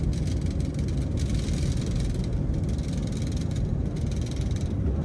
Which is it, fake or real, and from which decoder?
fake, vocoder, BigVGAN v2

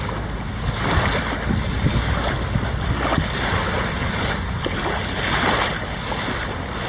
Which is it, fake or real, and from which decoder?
real